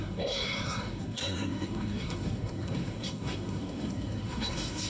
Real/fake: fake